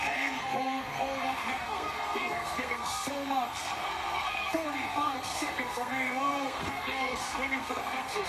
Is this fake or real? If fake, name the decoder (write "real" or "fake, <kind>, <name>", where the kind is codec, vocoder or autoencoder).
fake, codec, SNAC